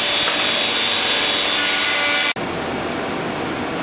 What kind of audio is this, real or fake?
real